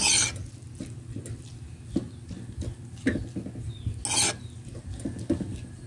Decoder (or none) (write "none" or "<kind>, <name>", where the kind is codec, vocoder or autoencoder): none